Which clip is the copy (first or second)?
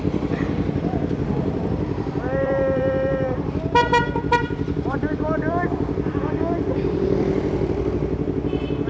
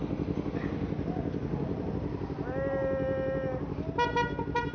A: first